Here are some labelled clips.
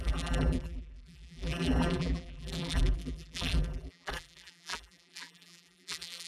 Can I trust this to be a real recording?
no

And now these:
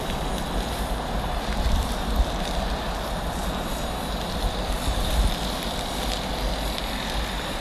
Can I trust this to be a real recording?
yes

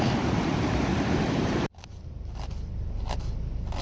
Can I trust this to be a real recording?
no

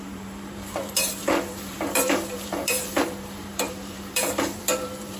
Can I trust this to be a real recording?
no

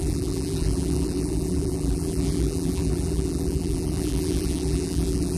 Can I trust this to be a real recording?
no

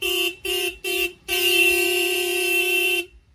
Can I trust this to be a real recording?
no